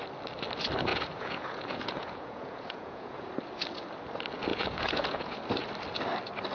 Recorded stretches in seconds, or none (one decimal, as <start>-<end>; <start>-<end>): 0.0-0.9; 3.3-4.5; 5.4-6.5